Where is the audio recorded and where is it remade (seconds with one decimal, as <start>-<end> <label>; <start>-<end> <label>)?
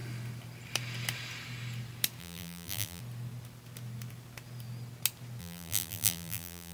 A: 0.0-2.2 recorded; 2.2-3.0 remade; 3.0-5.4 recorded; 5.4-6.7 remade